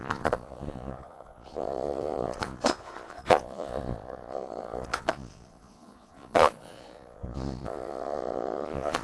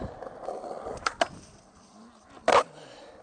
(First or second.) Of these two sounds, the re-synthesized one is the first